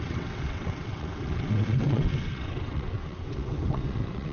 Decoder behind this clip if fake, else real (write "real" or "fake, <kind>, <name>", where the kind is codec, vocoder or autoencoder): fake, vocoder, WaveNeXt